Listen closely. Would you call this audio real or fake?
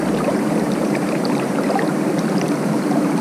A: fake